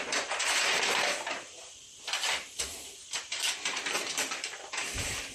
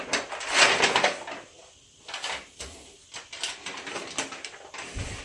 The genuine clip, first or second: second